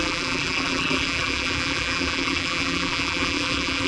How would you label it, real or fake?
fake